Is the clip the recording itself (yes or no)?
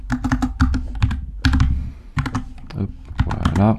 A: yes